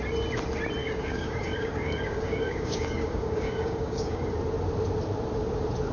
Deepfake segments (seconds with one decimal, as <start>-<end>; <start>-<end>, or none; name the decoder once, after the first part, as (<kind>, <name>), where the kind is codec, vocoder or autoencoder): 0.8-4.3 (codec, DAC)